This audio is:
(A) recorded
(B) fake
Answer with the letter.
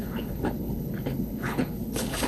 B